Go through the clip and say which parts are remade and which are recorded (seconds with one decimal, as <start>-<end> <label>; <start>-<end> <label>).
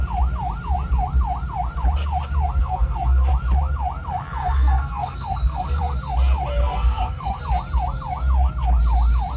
0.0-2.6 recorded; 2.6-3.3 remade; 3.3-4.4 recorded; 4.4-5.8 remade; 5.8-6.6 recorded; 6.6-7.4 remade; 7.4-9.4 recorded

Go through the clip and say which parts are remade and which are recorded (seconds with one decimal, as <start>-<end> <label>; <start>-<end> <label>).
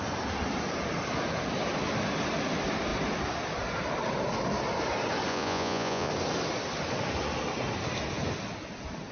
0.0-5.3 recorded; 5.3-6.1 remade; 6.1-9.1 recorded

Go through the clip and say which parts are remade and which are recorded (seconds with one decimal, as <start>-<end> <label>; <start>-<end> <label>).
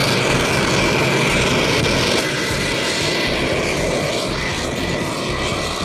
0.0-5.8 recorded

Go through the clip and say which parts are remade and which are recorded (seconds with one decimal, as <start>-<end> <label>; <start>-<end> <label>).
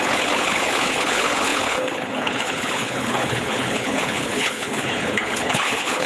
0.0-6.1 remade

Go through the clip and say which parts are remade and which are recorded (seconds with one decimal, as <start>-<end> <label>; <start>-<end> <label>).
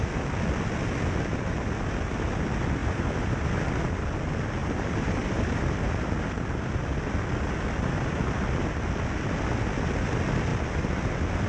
0.0-2.8 recorded; 2.8-3.5 remade; 3.5-4.6 recorded; 4.6-5.6 remade; 5.6-11.5 recorded